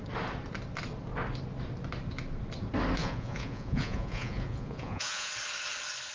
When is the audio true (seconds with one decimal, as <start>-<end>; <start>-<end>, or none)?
0.0-3.0; 5.3-6.1